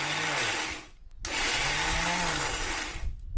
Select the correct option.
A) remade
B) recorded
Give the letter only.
B